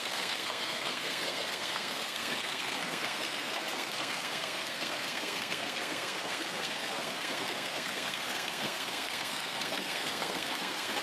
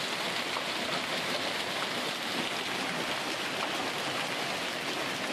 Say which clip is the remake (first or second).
first